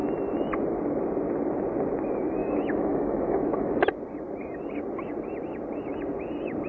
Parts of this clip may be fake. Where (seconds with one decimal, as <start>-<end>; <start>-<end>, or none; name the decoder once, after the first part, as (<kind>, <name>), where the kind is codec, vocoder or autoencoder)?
2.4-3.8 (autoencoder, DAC-VAE)